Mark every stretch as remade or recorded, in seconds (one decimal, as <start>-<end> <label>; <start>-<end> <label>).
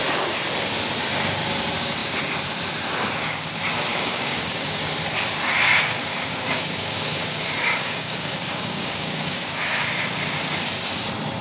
0.0-3.9 recorded; 3.9-4.8 remade; 4.8-6.1 recorded; 6.1-9.6 remade; 9.6-11.4 recorded